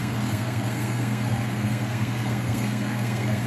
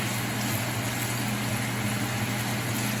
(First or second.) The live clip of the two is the second